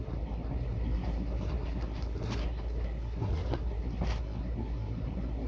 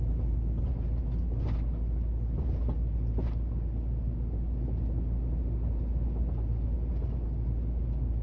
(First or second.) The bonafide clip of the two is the second